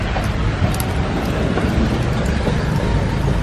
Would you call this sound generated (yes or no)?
no